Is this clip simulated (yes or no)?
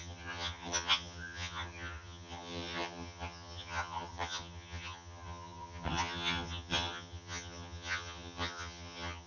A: yes